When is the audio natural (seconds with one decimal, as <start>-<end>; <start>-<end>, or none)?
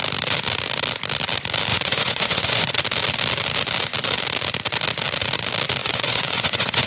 0.0-1.7; 2.8-5.8